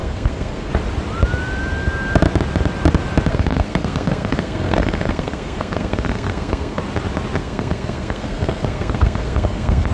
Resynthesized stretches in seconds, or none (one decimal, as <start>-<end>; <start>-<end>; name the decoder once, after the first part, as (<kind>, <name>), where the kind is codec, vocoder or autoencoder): 0.0-0.7 (codec, SNAC); 3.3-6.8; 7.4-9.9